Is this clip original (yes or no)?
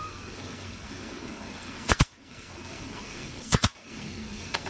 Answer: no